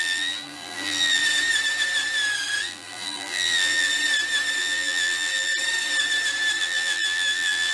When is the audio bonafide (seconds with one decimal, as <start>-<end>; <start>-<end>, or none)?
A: 1.2-2.6; 3.9-4.6; 5.5-6.6